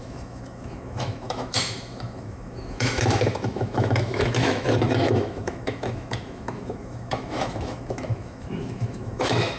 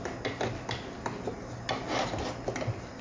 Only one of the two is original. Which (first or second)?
second